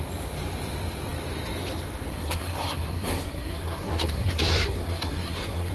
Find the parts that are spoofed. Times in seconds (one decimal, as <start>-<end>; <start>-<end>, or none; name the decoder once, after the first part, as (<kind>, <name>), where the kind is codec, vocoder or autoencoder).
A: 2.1-5.7 (codec, SNAC)